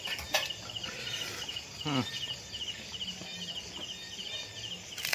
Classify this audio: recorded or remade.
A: recorded